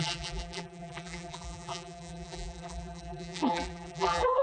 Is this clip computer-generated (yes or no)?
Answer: yes